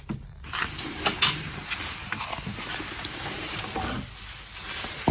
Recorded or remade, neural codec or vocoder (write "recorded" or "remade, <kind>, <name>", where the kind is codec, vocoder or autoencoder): recorded